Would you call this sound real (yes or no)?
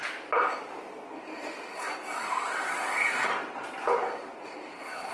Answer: no